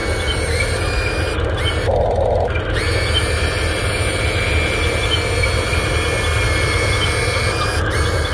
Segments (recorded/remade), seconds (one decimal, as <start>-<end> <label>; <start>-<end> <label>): 0.0-8.3 recorded